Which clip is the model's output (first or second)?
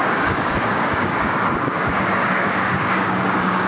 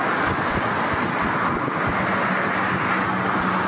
first